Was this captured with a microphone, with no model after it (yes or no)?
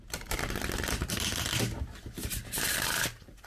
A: yes